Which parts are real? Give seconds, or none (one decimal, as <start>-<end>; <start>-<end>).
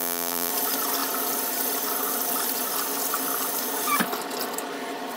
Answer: 0.5-5.2